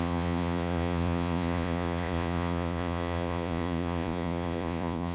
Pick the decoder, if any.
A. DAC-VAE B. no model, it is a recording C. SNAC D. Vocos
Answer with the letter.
D